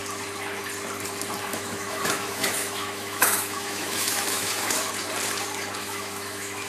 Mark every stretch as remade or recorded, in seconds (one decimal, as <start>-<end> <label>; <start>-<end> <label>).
0.0-1.5 recorded; 1.5-4.9 remade; 4.9-5.8 recorded; 5.8-6.7 remade